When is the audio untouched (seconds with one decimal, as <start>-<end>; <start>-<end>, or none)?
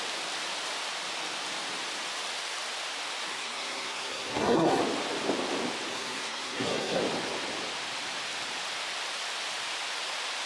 0.0-3.3; 4.8-5.9; 7.0-10.5